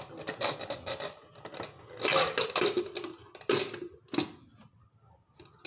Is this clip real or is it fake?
real